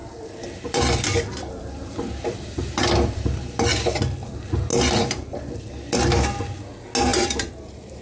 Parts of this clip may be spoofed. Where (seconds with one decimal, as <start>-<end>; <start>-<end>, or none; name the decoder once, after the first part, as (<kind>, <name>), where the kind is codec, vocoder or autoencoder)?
0.0-3.7 (vocoder, BigVGAN v2); 4.7-5.6; 7.1-8.0